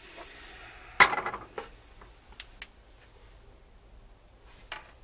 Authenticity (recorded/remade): recorded